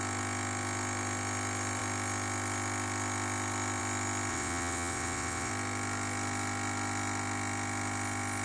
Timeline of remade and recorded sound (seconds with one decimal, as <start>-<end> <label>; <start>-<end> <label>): 0.0-4.3 recorded; 4.3-5.5 remade; 5.5-8.4 recorded